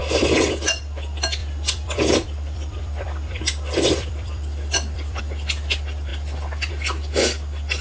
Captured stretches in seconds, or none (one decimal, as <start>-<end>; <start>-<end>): 0.8-1.4; 5.2-7.8